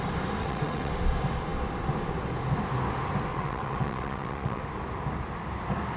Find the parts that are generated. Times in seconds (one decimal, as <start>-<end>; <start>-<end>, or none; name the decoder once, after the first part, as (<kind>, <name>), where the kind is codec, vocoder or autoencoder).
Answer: 0.4-0.9 (vocoder, WaveNeXt); 3.3-4.6